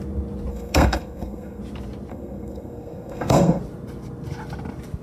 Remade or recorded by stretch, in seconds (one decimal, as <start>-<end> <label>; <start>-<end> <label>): 0.0-0.5 recorded; 0.5-1.6 remade; 1.6-2.1 recorded; 2.1-3.6 remade; 3.6-5.0 recorded